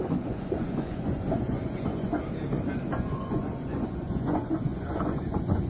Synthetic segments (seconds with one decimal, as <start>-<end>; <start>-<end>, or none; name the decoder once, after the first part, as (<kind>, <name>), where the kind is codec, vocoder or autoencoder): 0.0-2.2 (vocoder, Vocos); 2.9-5.7